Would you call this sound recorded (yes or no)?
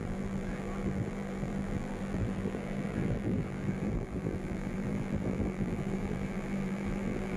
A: no